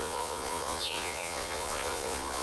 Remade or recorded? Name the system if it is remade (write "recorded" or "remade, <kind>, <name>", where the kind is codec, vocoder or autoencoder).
remade, vocoder, Vocos